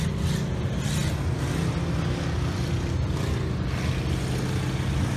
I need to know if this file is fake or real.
real